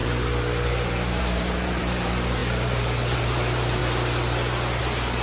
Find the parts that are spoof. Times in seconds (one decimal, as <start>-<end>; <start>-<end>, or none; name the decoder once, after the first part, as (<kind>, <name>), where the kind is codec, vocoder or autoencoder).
1.2-3.8 (vocoder, BigVGAN v2); 4.8-5.2